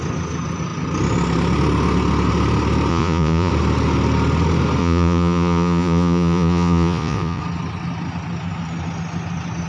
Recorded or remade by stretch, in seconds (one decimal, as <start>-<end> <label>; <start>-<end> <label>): 0.0-2.9 recorded; 2.9-3.5 remade; 3.5-4.8 recorded; 4.8-7.4 remade; 7.4-9.7 recorded